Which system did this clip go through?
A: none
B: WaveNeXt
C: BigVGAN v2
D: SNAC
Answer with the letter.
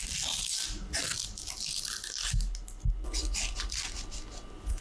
A